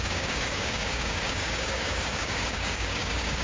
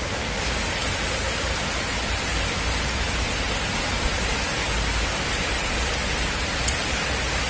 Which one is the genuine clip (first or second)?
second